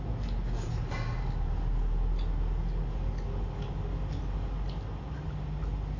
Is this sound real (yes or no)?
yes